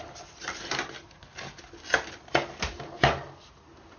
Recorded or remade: recorded